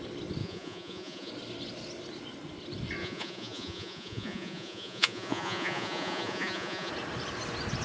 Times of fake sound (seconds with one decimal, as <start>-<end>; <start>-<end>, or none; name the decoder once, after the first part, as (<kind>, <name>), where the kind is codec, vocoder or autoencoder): 0.4-1.3 (vocoder, Vocos); 3.0-6.9